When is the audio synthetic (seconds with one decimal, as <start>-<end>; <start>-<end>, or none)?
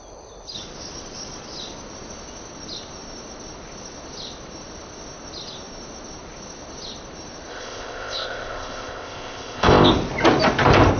7.5-9.9